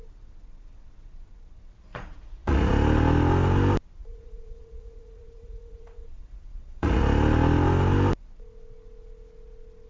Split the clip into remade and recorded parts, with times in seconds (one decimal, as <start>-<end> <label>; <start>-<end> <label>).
0.0-1.9 recorded; 1.9-2.7 remade; 2.7-4.0 recorded; 4.0-7.0 remade; 7.0-9.9 recorded